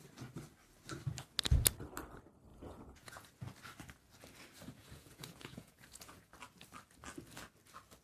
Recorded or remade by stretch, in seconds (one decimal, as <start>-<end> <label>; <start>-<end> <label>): 0.0-2.5 recorded; 2.5-3.3 remade; 3.3-4.8 recorded; 4.8-6.3 remade; 6.3-8.0 recorded